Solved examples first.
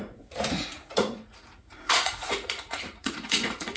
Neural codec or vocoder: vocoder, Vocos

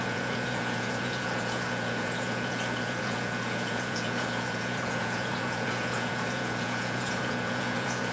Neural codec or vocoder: vocoder, Vocos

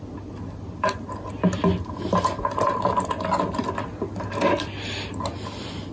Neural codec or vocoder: none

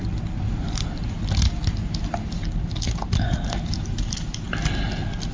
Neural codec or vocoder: none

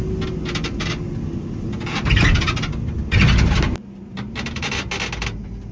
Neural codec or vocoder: none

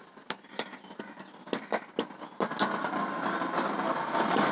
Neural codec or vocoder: none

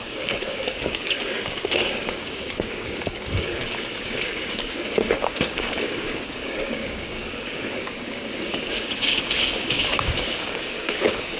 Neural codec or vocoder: codec, DAC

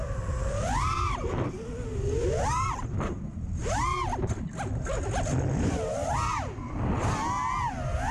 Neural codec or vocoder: none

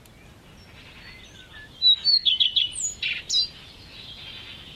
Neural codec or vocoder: none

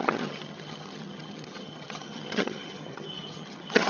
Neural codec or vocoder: vocoder, HiFi-GAN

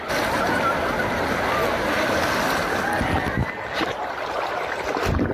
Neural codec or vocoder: none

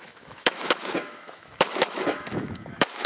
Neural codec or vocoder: autoencoder, DAC-VAE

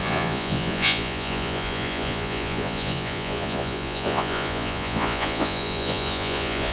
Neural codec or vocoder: vocoder, Vocos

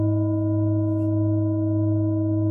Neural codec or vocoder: none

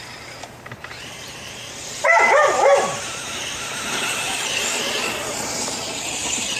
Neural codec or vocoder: vocoder, BigVGAN v2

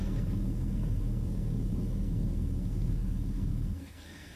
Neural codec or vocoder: codec, SNAC